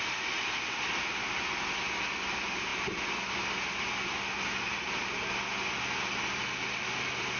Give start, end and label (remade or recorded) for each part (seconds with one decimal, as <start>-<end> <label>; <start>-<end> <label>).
0.0-7.4 recorded